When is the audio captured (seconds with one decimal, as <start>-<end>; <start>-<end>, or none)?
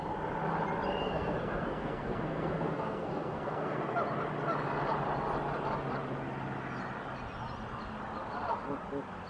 0.0-1.0; 3.8-9.3